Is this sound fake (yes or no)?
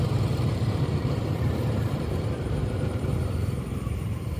yes